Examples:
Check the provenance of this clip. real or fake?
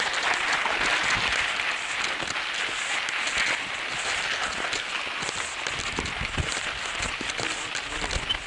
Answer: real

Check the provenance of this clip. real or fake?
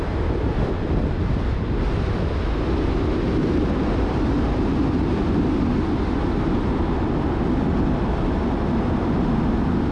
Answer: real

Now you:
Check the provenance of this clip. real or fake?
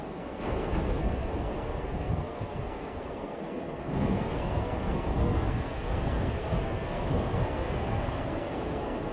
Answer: fake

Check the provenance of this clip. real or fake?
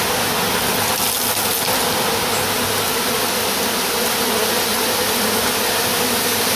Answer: real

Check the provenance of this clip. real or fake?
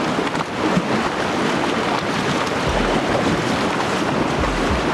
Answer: real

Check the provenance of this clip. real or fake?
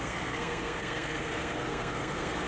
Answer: fake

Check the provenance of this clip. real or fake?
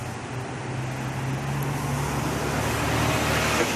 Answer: real